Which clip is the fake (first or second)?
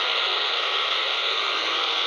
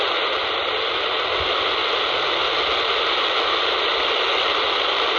first